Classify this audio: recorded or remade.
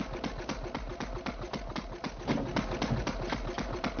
recorded